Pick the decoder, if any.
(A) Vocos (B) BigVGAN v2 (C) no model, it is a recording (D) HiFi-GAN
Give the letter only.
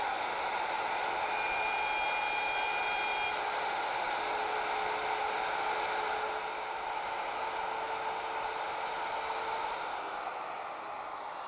C